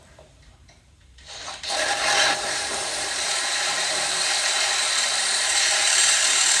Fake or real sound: fake